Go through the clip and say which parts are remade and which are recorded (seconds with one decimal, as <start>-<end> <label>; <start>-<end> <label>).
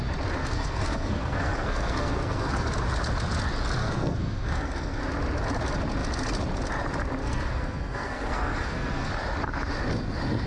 0.0-0.4 recorded; 0.4-2.7 remade; 2.7-3.8 recorded; 3.8-5.0 remade; 5.0-7.2 recorded; 7.2-9.1 remade; 9.1-10.5 recorded